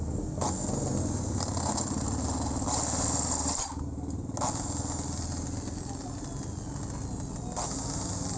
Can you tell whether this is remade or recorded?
recorded